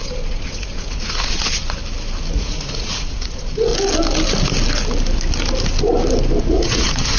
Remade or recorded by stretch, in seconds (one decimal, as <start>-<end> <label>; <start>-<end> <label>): 0.0-1.8 remade; 1.8-2.3 recorded; 2.3-3.7 remade; 3.7-6.4 recorded; 6.4-7.2 remade